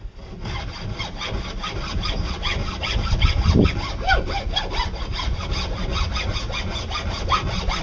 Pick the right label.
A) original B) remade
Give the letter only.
A